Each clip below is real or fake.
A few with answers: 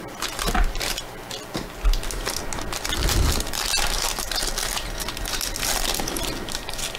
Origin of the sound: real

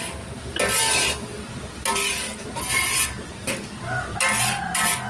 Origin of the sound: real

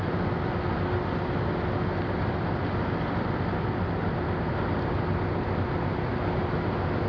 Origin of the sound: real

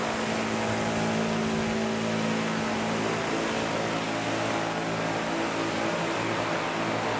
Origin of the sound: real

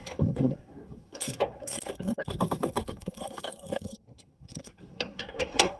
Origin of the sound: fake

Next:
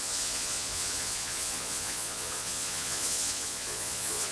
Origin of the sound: fake